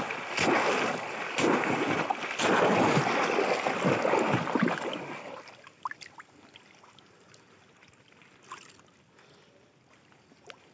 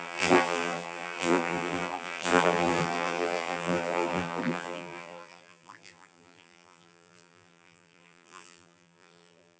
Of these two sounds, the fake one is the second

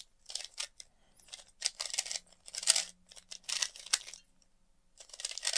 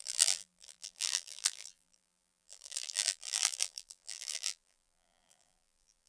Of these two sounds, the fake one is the second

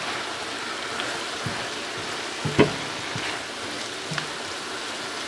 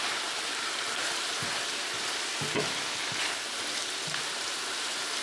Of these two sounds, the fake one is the second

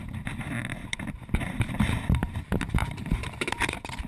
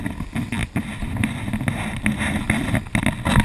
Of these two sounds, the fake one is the first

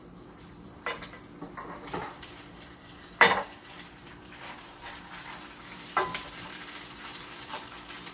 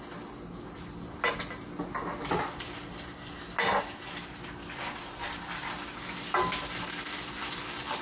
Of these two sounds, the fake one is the first